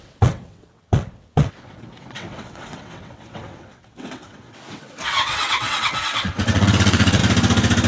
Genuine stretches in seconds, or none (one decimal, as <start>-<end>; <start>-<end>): 7.2-7.9